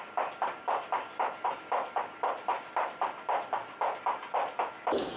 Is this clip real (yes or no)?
yes